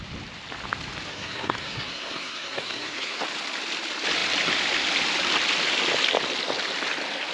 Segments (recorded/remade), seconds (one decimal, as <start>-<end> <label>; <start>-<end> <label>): 0.0-1.1 recorded; 1.1-3.2 remade; 3.2-7.3 recorded

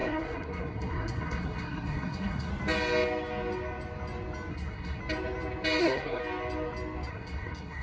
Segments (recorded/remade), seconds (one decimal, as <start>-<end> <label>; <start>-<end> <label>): 0.0-2.5 remade; 2.5-4.5 recorded; 4.5-5.0 remade; 5.0-5.8 recorded; 5.8-6.2 remade; 6.2-7.1 recorded; 7.1-7.8 remade

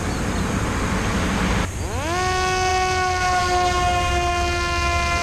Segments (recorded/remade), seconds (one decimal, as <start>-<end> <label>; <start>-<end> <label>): 0.0-5.2 recorded

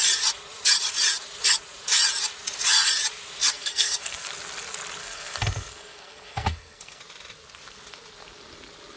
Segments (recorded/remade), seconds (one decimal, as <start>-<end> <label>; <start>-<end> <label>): 0.0-3.5 recorded; 3.5-4.3 remade; 4.3-5.0 recorded; 5.0-7.0 remade; 7.0-9.0 recorded